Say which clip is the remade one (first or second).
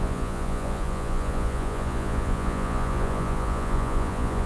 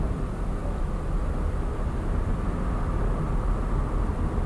first